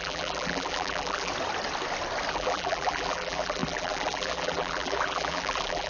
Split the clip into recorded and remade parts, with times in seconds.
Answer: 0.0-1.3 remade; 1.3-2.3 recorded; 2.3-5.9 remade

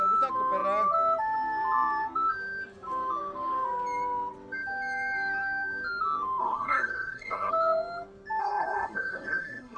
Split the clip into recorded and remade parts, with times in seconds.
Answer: 0.0-6.4 recorded; 6.4-7.5 remade; 7.5-8.4 recorded; 8.4-9.8 remade

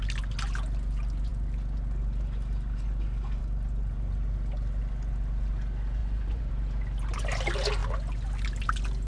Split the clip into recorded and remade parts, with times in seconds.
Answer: 0.0-6.0 recorded; 6.0-6.5 remade; 6.5-9.1 recorded

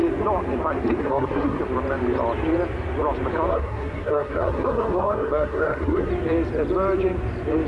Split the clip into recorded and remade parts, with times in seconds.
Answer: 0.0-1.0 recorded; 1.0-1.6 remade; 1.6-3.5 recorded; 3.5-6.1 remade; 6.1-7.7 recorded